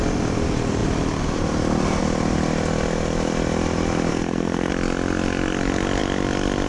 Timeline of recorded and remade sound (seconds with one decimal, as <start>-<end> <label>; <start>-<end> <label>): 0.0-4.1 recorded; 4.1-4.7 remade; 4.7-6.7 recorded